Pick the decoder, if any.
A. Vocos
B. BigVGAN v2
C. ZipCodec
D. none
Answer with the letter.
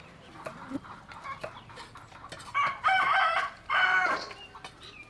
B